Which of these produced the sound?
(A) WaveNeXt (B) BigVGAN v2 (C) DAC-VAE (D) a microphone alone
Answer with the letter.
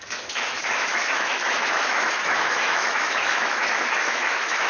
C